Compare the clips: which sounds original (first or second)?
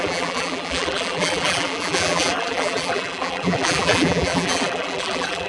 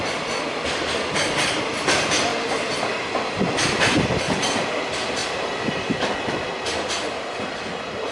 second